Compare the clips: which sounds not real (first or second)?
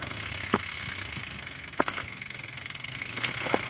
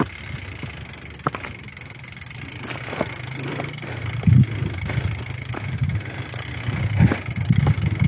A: first